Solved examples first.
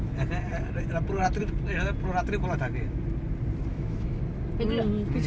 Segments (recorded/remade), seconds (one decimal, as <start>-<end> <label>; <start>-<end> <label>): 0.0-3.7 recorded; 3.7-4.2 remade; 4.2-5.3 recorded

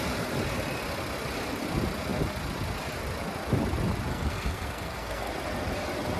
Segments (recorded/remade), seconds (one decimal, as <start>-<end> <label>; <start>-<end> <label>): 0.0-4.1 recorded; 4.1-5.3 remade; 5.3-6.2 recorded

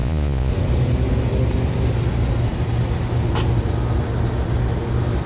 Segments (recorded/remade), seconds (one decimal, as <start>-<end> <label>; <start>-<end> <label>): 0.0-0.5 remade; 0.5-5.3 recorded

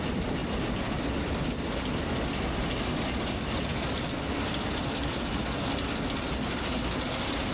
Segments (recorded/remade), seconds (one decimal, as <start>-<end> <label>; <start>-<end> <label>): 0.0-7.5 recorded

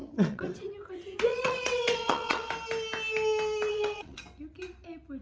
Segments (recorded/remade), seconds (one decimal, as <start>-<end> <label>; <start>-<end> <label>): 0.0-0.7 remade; 0.7-1.3 recorded; 1.3-2.5 remade; 2.5-3.7 recorded; 3.7-4.2 remade; 4.2-5.2 recorded

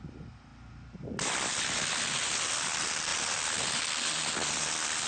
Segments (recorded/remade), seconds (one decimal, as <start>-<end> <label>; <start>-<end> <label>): 0.0-5.1 recorded